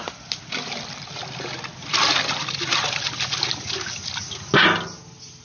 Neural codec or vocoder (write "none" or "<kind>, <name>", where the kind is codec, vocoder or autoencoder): none